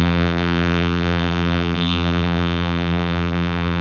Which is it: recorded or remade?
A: remade